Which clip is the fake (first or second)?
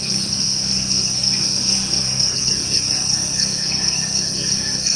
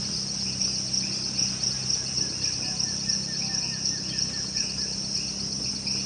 first